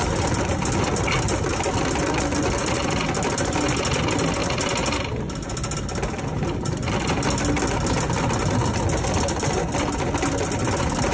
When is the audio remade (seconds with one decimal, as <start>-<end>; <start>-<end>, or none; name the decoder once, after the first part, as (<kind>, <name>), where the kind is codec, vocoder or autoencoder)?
none